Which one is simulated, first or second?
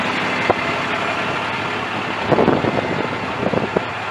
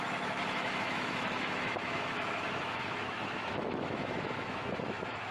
second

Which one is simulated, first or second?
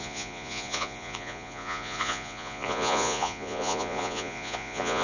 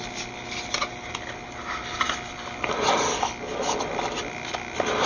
first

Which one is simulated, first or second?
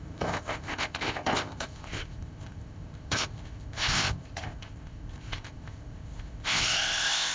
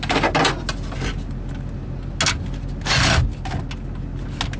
first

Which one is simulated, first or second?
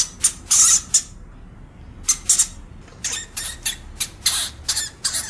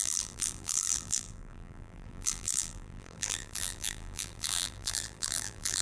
second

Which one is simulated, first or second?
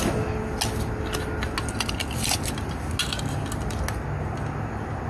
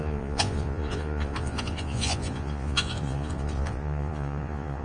second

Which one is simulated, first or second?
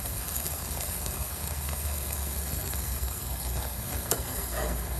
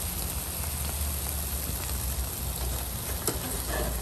first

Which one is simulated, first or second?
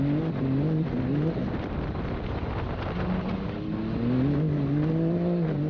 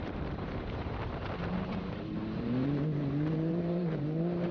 second